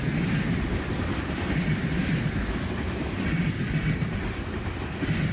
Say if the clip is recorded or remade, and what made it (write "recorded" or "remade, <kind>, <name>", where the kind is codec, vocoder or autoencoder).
recorded